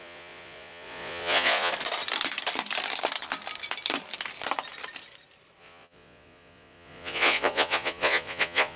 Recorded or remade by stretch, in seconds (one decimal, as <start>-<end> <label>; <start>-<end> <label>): 0.0-1.7 remade; 1.7-5.6 recorded; 5.6-8.8 remade